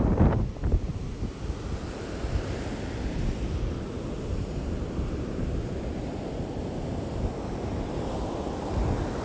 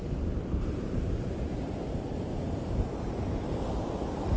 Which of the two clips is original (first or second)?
first